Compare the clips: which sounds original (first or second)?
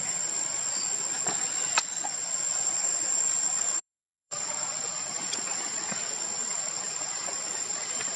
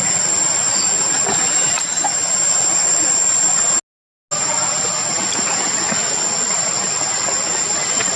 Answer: second